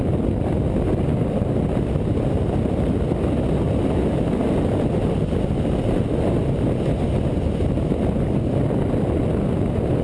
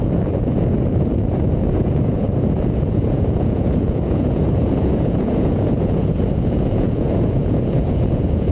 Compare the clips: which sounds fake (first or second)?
second